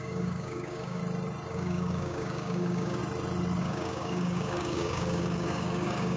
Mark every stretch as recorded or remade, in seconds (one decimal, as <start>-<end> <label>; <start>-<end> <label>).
0.0-1.0 remade; 1.0-1.5 recorded; 1.5-3.0 remade; 3.0-3.6 recorded; 3.6-6.2 remade